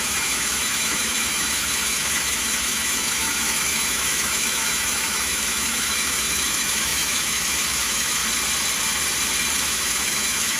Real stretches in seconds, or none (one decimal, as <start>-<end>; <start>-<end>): 8.2-9.6